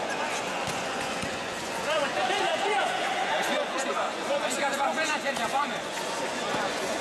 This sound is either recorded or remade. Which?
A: remade